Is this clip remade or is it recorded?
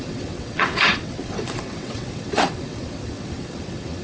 remade